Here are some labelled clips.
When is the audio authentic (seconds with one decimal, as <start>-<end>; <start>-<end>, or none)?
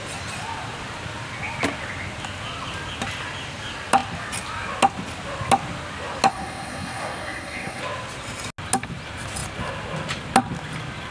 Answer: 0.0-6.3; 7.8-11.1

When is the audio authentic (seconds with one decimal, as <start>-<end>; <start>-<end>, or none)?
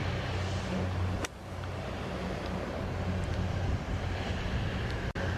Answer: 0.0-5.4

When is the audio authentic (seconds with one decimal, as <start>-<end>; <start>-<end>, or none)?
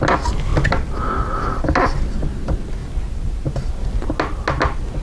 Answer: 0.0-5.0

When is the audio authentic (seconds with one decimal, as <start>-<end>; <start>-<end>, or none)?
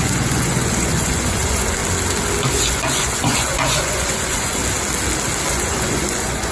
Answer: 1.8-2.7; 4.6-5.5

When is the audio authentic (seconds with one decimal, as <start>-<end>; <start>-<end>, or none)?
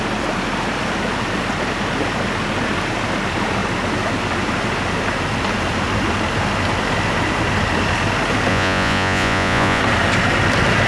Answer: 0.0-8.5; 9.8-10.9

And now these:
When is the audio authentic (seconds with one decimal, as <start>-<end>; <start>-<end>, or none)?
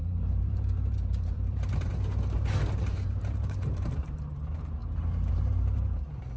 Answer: 1.9-2.8; 4.8-5.3